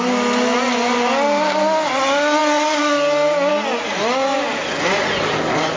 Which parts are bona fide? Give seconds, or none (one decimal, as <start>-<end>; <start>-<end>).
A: 0.0-5.8